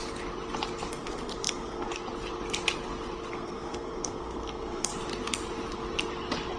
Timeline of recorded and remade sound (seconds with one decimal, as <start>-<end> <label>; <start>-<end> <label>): 0.0-0.9 recorded; 0.9-1.9 remade; 1.9-3.3 recorded; 3.3-4.9 remade; 4.9-6.6 recorded